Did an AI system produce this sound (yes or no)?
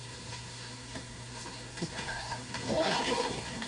yes